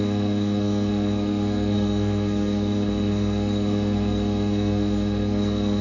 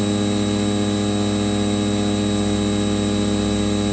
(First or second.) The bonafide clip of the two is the second